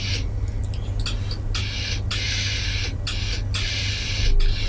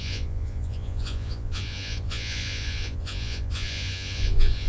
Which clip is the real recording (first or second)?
first